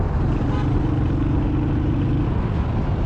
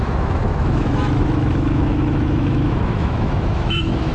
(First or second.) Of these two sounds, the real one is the first